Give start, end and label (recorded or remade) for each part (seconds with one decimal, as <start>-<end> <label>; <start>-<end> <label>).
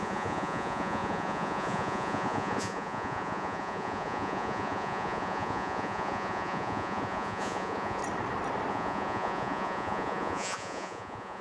0.0-8.0 remade; 8.0-8.7 recorded; 8.7-11.4 remade